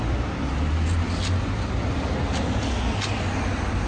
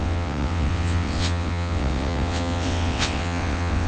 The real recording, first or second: first